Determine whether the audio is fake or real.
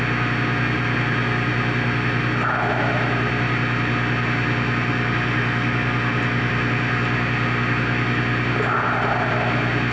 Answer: real